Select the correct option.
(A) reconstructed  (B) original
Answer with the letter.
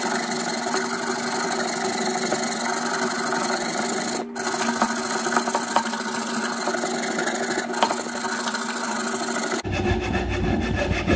B